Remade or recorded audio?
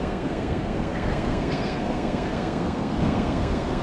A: remade